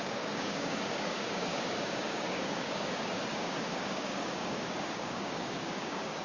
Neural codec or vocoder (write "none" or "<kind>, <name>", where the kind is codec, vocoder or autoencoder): codec, DAC